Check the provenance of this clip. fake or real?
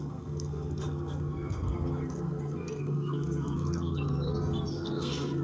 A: fake